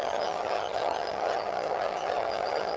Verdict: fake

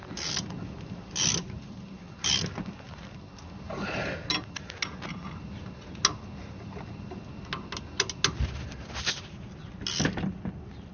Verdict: real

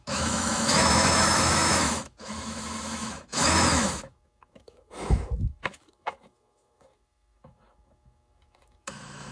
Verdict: fake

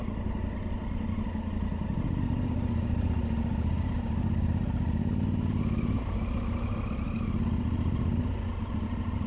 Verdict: real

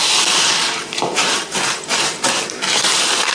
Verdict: fake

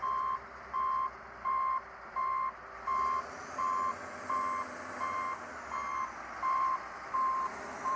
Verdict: fake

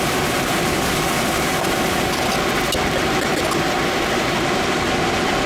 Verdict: real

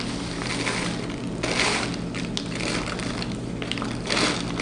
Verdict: real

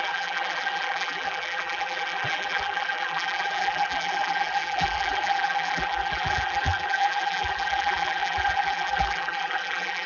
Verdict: fake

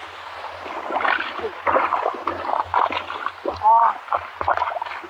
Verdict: real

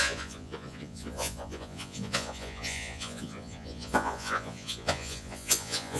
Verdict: fake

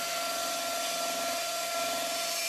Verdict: real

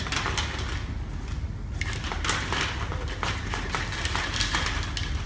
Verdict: real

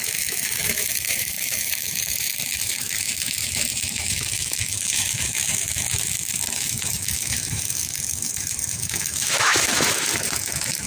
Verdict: fake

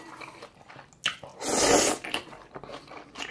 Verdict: real